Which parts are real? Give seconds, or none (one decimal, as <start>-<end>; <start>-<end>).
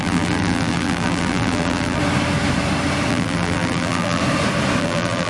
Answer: 2.0-3.1; 4.2-4.8